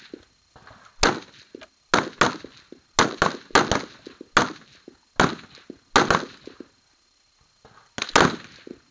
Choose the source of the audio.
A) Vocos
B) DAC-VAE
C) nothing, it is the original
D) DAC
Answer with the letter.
C